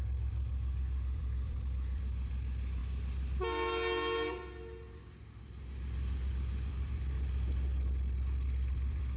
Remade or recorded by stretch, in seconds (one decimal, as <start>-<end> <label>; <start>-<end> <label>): 0.0-2.8 remade; 2.8-6.7 recorded; 6.7-9.2 remade